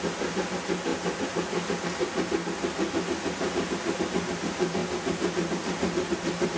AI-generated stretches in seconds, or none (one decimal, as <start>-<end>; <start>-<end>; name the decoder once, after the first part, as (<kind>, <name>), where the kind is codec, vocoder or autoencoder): none